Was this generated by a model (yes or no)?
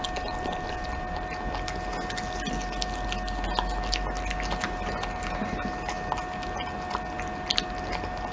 no